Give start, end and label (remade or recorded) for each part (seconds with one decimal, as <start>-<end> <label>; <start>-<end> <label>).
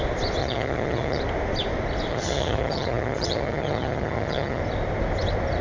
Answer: 0.0-0.4 recorded; 0.4-1.2 remade; 1.2-2.1 recorded; 2.1-4.6 remade; 4.6-5.6 recorded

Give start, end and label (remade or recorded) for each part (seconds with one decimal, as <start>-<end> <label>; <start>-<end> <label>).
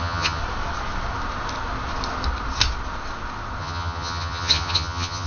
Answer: 0.0-0.4 remade; 0.4-3.6 recorded; 3.6-5.3 remade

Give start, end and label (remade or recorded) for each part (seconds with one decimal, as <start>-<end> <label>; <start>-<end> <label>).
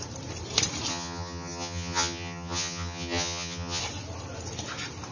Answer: 0.0-0.9 recorded; 0.9-3.8 remade; 3.8-5.1 recorded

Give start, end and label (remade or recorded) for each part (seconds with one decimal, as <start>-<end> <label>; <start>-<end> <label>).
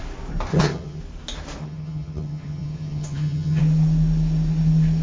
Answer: 0.0-0.5 recorded; 0.5-1.0 remade; 1.0-1.6 recorded; 1.6-3.6 remade; 3.6-5.0 recorded